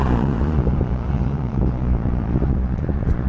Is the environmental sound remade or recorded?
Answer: remade